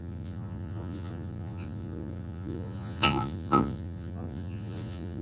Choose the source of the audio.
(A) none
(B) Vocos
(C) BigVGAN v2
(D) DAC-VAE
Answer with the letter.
B